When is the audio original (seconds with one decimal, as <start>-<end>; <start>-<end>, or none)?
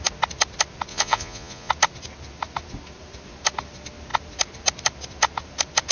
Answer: 0.0-0.9; 1.7-5.9